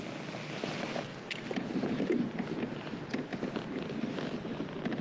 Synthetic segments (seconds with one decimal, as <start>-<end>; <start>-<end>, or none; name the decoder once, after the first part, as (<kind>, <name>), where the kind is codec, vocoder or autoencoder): none